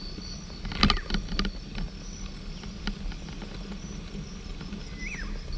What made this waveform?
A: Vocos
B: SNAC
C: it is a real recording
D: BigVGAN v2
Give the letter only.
C